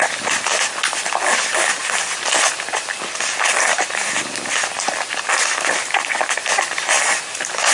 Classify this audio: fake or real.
real